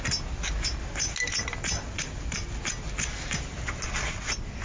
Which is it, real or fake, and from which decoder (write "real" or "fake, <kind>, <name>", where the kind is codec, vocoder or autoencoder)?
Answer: real